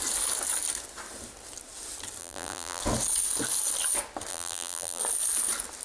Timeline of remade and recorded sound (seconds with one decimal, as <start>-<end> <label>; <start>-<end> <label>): 0.0-2.2 recorded; 2.2-2.8 remade; 2.8-4.3 recorded; 4.3-5.0 remade; 5.0-5.8 recorded